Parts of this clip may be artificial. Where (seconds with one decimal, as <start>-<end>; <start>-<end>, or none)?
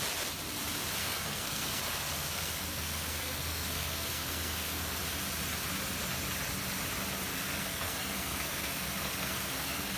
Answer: 1.0-5.0; 7.3-10.0